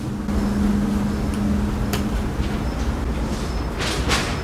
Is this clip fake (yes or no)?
no